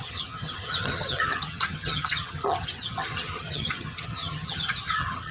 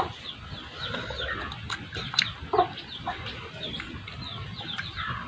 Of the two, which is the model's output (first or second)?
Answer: first